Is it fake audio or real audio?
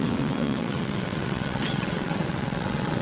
fake